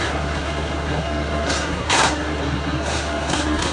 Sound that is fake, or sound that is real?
fake